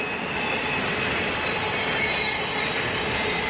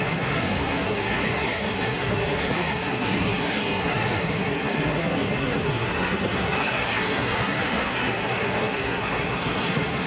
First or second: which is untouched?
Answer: first